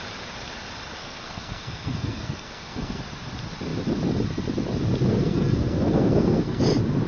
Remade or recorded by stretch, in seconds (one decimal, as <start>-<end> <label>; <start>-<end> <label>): 0.0-1.0 recorded; 1.0-3.0 remade; 3.0-5.1 recorded; 5.1-6.6 remade; 6.6-7.1 recorded